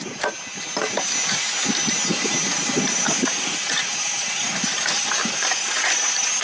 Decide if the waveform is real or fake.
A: real